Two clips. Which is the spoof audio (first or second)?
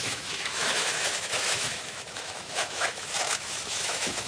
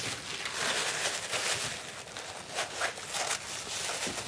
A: first